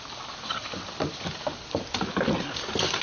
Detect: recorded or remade recorded